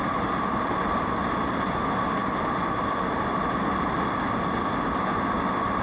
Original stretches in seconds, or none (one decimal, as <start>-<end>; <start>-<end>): 0.0-5.8

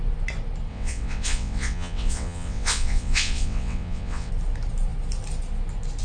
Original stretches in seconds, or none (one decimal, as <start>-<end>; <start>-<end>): 0.0-0.7; 4.3-6.0

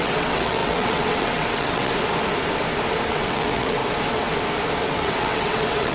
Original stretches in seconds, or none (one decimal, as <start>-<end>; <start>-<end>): 1.9-3.1; 3.8-4.9

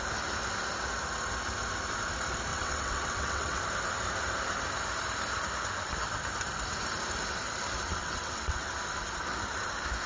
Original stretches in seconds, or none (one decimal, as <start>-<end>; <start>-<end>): 0.0-2.5; 3.6-8.0; 8.7-10.1

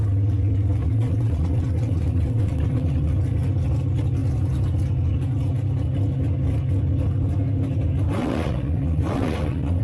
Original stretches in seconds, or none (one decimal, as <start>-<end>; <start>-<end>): 0.0-0.8; 3.1-8.2

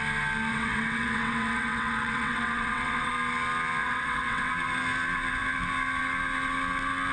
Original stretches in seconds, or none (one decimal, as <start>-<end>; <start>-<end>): 0.0-0.5; 3.1-3.8; 4.5-7.1